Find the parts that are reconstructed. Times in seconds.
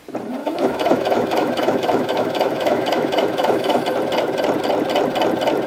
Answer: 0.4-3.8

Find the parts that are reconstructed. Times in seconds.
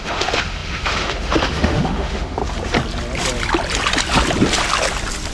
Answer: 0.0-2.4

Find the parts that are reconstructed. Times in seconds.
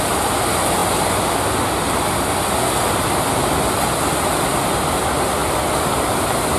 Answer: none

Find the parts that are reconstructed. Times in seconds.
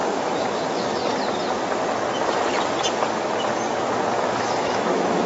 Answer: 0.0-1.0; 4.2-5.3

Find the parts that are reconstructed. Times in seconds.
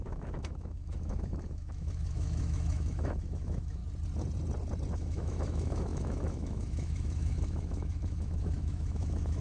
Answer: 0.0-3.8; 4.9-9.4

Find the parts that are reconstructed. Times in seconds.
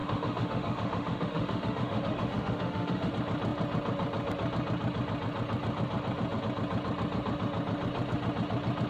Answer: 0.0-3.1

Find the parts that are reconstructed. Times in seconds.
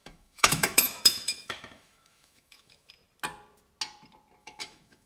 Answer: 0.0-2.9; 4.4-5.1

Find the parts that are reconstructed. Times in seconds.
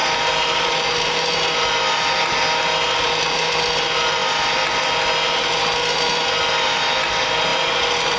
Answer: none